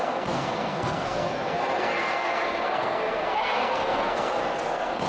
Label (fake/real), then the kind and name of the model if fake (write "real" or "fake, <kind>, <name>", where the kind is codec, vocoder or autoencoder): fake, codec, SNAC